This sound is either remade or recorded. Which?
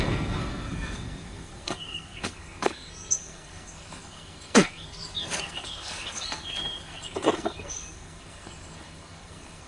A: remade